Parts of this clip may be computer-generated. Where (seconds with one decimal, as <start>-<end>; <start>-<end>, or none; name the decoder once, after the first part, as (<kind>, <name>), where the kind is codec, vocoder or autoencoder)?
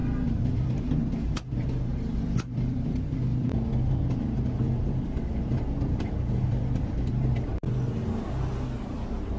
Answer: 0.0-1.0 (vocoder, BigVGAN v2); 1.9-7.1